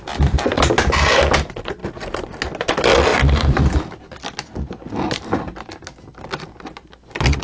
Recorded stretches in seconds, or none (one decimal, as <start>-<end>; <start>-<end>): 0.0-3.1; 3.6-7.4